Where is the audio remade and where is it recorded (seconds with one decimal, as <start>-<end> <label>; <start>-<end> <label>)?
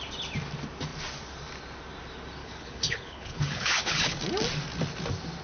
0.0-2.4 recorded; 2.4-4.2 remade; 4.2-5.4 recorded